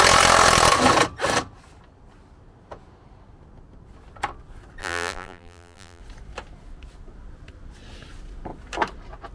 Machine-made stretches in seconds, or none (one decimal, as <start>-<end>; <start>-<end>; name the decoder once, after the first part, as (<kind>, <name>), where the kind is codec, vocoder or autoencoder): 4.8-6.0 (vocoder, BigVGAN v2)

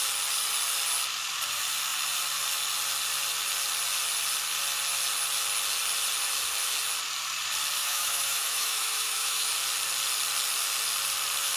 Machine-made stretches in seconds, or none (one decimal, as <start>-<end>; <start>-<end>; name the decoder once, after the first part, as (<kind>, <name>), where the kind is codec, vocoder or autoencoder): 7.8-9.5 (autoencoder, DAC-VAE)

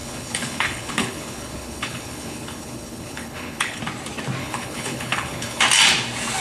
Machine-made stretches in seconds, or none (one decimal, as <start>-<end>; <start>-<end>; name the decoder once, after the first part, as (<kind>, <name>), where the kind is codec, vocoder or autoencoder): 0.0-3.8 (codec, HILCodec); 4.4-5.6

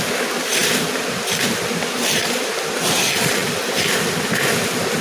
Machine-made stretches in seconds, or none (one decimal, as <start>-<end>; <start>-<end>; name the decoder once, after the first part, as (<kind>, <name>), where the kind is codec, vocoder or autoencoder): 0.6-3.0 (vocoder, BigVGAN v2)

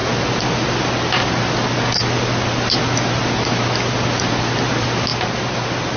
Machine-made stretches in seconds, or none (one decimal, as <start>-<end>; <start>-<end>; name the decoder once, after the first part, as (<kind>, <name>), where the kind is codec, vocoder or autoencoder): none

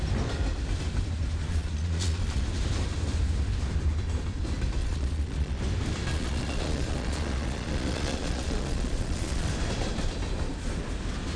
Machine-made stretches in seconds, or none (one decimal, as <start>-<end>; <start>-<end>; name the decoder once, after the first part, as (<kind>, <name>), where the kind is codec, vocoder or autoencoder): 1.4-2.4 (vocoder, Vocos); 4.8-5.6; 6.1-9.5